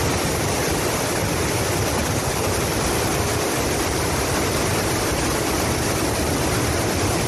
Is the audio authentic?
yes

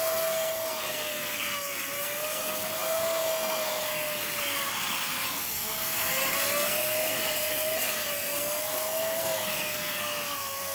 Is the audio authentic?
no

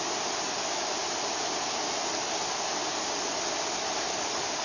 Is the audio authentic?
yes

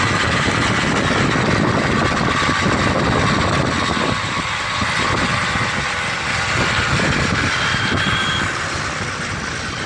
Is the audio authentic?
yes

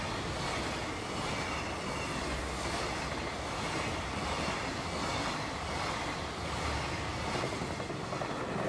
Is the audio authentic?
yes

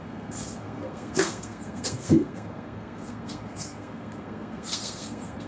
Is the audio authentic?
no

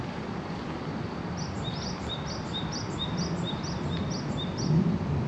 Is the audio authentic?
yes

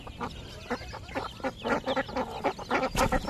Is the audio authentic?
yes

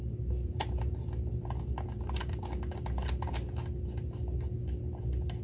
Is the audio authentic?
yes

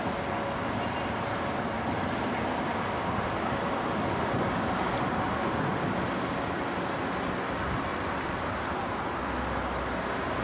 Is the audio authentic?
yes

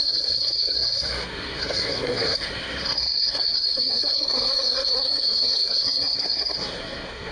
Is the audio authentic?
no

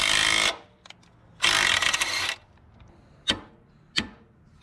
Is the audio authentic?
yes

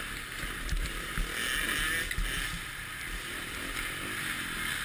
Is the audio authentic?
yes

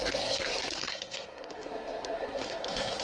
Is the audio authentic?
no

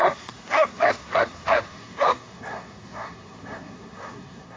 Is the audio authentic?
no